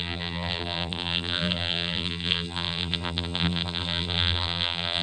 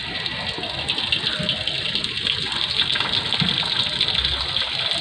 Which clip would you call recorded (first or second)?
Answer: second